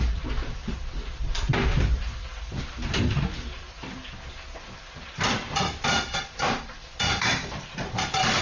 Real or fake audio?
fake